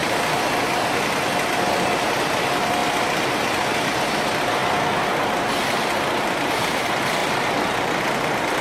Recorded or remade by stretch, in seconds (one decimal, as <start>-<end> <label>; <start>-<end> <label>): 0.0-8.6 recorded